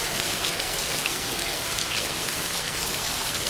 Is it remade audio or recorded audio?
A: remade